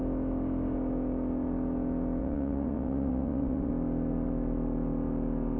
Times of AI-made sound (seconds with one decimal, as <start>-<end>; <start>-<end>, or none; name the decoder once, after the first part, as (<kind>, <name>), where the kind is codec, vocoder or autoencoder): 2.2-3.7 (vocoder, Vocos)